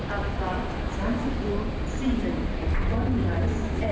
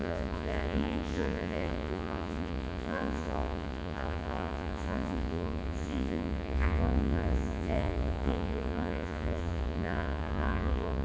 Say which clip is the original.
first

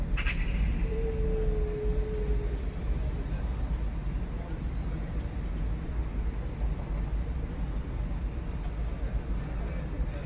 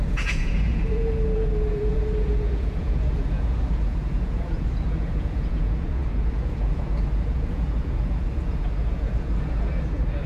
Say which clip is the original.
first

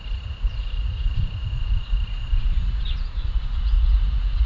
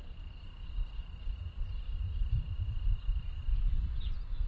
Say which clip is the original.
second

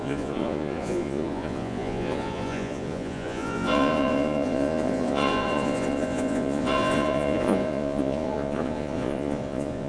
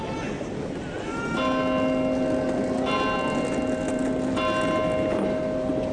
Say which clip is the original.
second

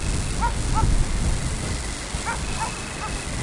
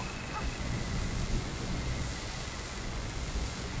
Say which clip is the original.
first